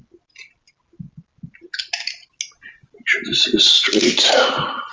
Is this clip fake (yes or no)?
no